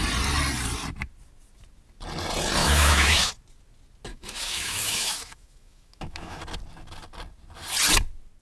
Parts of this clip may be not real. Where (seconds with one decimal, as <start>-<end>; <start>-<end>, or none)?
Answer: 2.6-3.3; 4.1-6.4